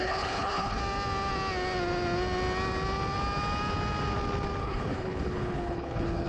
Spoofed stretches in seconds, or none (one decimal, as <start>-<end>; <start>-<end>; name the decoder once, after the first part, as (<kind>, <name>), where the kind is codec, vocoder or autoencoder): 0.0-0.8 (codec, HILCodec); 4.6-6.3